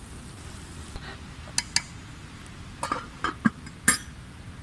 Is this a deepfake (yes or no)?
no